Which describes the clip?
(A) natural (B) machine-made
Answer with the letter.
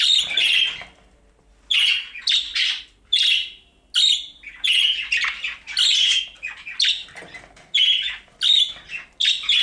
A